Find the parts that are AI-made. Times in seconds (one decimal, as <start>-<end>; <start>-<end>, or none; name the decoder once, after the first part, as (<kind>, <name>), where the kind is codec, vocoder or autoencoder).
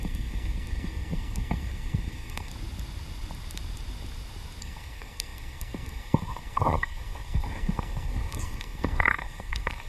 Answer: 0.0-2.5 (codec, SNAC); 4.6-9.9